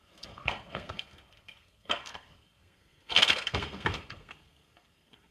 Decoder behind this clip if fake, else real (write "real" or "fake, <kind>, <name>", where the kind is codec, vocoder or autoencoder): fake, codec, SNAC